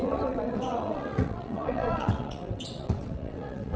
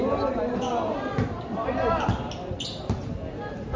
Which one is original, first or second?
second